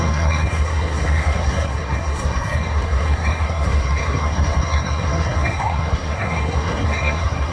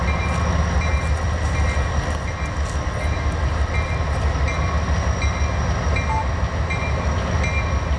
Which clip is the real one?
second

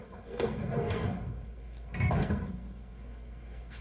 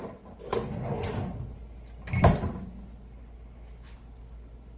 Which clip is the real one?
second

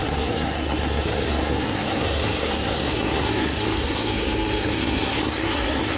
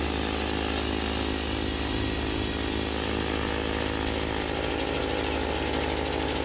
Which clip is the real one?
second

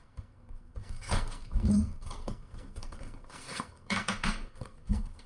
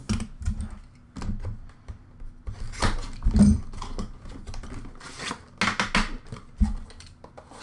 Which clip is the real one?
second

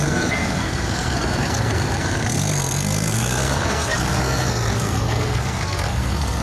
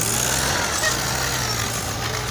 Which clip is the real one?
second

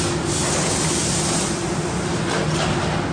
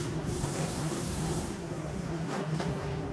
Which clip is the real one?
first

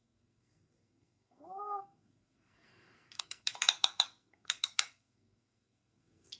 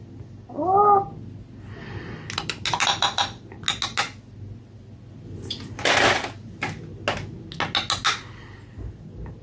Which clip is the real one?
second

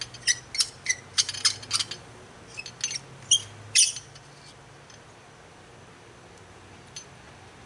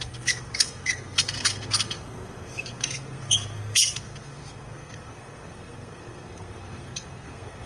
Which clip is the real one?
first